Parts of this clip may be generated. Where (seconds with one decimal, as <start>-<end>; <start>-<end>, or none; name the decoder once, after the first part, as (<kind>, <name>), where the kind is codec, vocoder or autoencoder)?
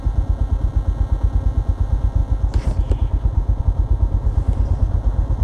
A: none